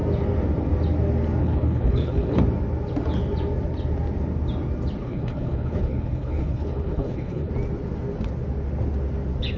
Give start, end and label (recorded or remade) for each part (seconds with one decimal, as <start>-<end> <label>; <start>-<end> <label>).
0.0-1.4 recorded; 1.4-2.4 remade; 2.4-5.0 recorded; 5.0-7.5 remade; 7.5-9.6 recorded